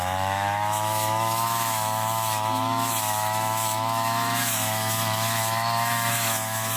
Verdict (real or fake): fake